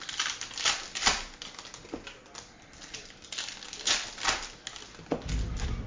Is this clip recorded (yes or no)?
yes